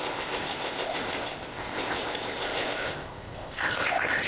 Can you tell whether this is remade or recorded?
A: remade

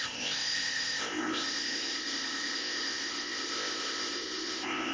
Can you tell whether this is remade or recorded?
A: remade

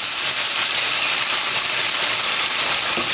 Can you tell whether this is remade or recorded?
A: recorded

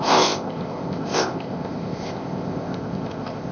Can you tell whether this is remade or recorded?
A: remade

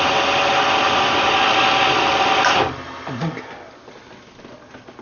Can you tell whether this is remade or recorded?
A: recorded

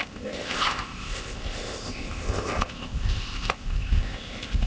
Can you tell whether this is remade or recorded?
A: remade